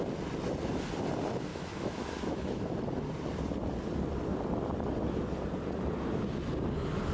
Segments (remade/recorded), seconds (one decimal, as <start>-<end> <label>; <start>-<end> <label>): 0.0-1.5 recorded; 1.5-2.6 remade; 2.6-7.1 recorded